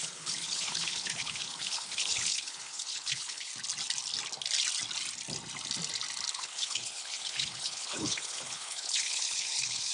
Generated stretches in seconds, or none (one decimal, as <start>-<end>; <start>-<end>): 0.0-3.5; 6.3-9.9